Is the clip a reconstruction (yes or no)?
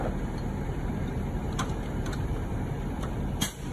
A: yes